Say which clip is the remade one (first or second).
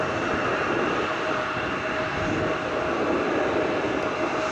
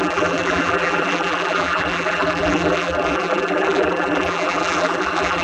second